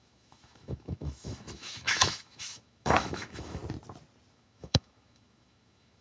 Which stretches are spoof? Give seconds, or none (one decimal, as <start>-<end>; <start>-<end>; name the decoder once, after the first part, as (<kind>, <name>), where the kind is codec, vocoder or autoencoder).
0.0-3.6 (autoencoder, DAC-VAE); 4.3-6.0